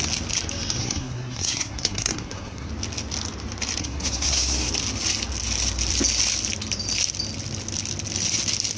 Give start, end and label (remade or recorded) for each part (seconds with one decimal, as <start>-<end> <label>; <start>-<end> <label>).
0.0-0.8 recorded; 0.8-2.7 remade; 2.7-3.8 recorded; 3.8-4.7 remade; 4.7-8.8 recorded